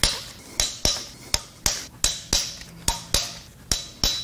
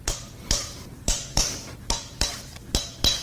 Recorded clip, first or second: first